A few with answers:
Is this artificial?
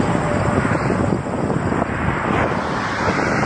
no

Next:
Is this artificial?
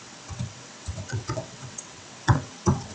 yes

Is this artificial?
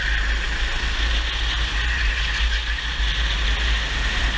no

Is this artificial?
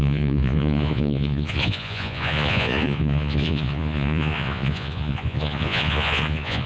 yes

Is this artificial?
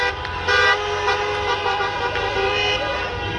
no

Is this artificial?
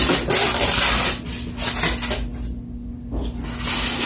no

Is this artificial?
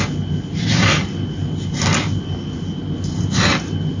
no